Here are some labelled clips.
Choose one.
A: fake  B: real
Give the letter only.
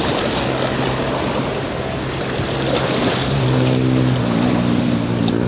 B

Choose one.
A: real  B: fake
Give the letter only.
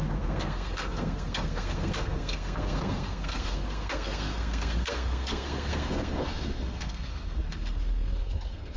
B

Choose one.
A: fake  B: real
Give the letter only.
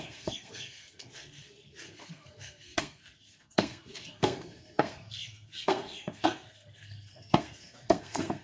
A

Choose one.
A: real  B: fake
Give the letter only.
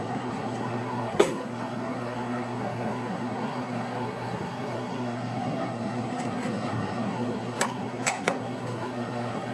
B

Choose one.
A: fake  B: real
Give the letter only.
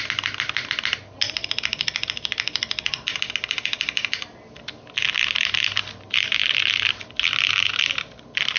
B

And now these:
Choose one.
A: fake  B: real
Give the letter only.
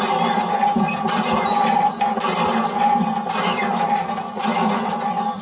B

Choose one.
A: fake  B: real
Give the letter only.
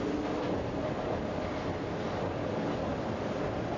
B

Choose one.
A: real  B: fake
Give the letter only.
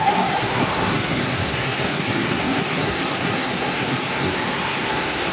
B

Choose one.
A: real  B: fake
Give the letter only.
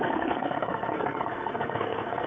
B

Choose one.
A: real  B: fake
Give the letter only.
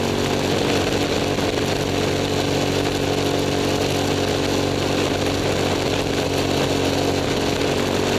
A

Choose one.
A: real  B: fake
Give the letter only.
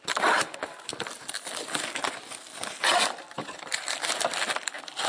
A